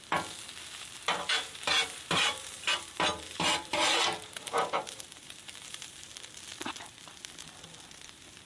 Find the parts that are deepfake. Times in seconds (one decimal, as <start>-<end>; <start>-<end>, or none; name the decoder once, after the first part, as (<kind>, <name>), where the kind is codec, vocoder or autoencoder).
1.3-6.1 (vocoder, BigVGAN v2)